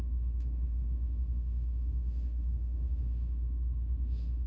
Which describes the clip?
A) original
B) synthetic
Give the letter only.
B